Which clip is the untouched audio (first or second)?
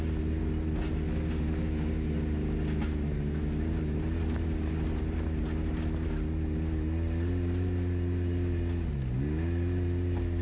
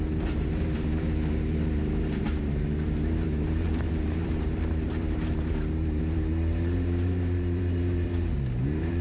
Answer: first